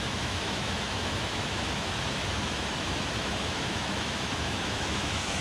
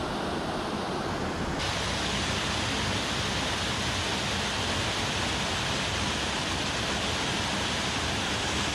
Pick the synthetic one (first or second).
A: first